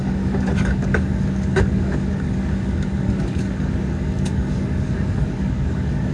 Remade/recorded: remade